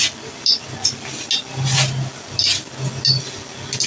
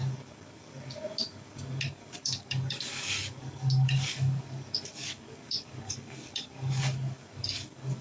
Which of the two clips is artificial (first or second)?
second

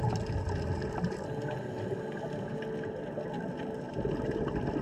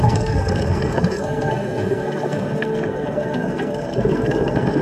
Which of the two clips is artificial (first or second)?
second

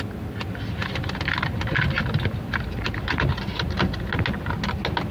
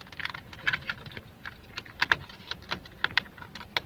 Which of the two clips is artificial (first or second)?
second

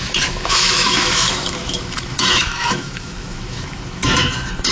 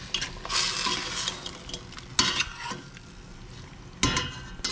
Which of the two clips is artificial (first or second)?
first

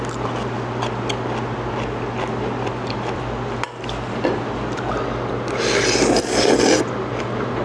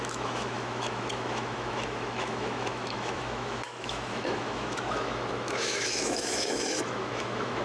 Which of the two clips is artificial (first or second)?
second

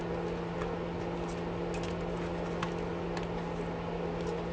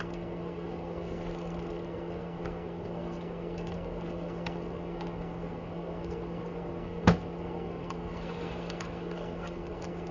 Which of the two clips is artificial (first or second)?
second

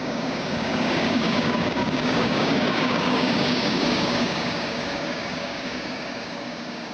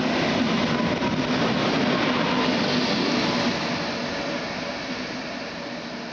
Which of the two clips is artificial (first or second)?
first